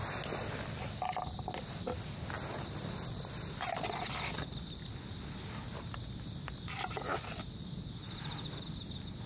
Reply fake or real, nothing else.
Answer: real